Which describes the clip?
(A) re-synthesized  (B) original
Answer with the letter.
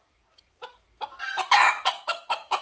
A